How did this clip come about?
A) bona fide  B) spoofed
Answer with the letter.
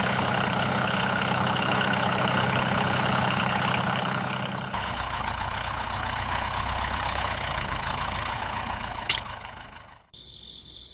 B